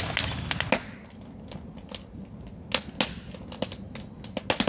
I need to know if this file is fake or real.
real